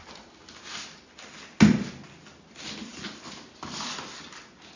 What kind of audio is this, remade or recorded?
recorded